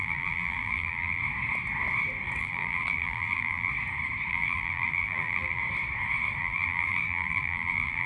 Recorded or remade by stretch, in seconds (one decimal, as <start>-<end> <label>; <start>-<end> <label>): 0.0-1.2 remade; 1.2-2.4 recorded; 2.4-3.7 remade; 3.7-4.3 recorded; 4.3-5.6 remade; 5.6-6.4 recorded; 6.4-8.1 remade